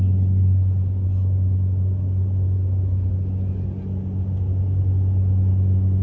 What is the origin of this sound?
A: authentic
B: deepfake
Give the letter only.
A